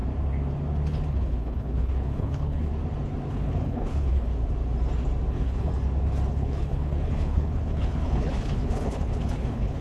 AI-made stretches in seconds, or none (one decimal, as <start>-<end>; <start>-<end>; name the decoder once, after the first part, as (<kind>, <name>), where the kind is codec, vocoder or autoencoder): 1.1-2.7 (codec, HILCodec); 3.3-4.3; 5.3-5.7; 6.3-9.8